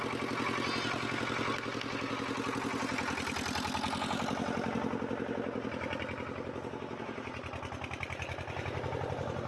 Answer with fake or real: real